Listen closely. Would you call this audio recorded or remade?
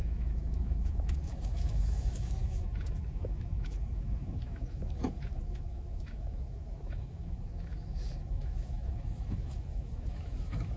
remade